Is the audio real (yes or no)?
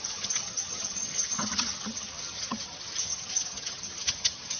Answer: no